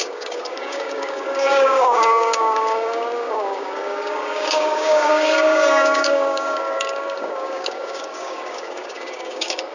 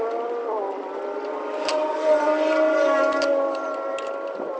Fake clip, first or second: first